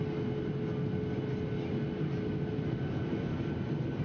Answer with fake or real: real